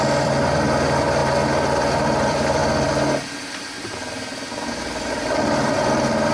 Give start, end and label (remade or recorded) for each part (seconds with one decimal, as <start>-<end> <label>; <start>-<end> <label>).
0.0-1.2 remade; 1.2-1.8 recorded; 1.8-2.6 remade; 2.6-4.8 recorded; 4.8-6.3 remade